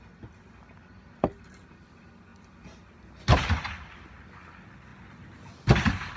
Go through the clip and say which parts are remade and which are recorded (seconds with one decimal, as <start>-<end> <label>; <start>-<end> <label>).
0.0-6.2 recorded